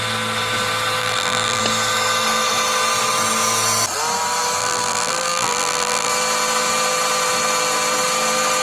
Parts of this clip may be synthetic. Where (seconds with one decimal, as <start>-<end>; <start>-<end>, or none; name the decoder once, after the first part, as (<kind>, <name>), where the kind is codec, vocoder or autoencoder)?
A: 1.0-1.6 (vocoder, BigVGAN v2); 4.6-6.1